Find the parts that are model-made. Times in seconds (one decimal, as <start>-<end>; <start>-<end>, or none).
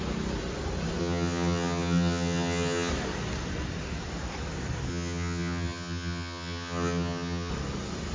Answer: 1.0-2.9; 4.9-7.5